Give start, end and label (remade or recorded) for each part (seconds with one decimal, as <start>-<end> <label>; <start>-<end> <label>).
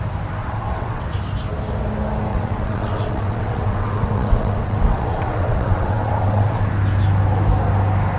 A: 0.0-0.4 recorded; 0.4-1.1 remade; 1.1-2.3 recorded; 2.3-6.7 remade; 6.7-8.2 recorded